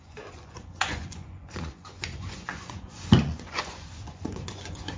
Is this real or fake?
fake